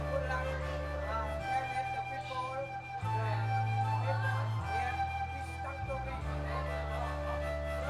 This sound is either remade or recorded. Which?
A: recorded